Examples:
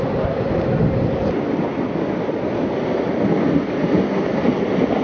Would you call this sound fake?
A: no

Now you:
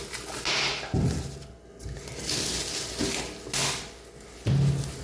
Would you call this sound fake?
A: no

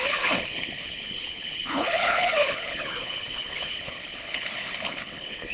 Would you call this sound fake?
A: yes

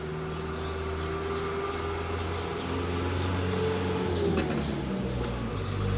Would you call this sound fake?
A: no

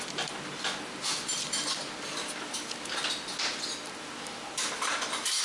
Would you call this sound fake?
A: no